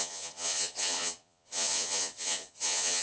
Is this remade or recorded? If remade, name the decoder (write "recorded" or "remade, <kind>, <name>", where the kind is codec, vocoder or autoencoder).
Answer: remade, vocoder, Vocos